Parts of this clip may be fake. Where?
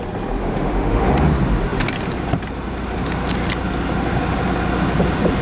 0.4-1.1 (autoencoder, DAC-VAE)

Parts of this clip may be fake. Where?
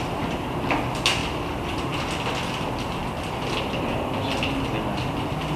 1.2-2.0 (vocoder, BigVGAN v2)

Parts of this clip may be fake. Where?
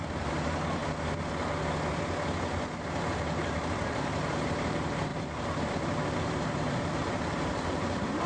0.0-0.8 (vocoder, BigVGAN v2); 2.8-8.3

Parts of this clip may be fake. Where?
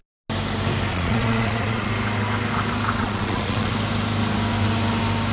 0.9-1.9 (vocoder, Vocos); 3.0-3.7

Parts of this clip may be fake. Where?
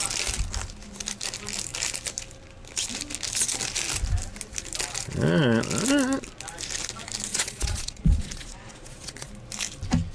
7.3-9.3 (vocoder, Vocos)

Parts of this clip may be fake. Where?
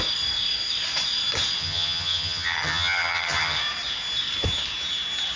1.6-3.6 (vocoder, HiFi-GAN)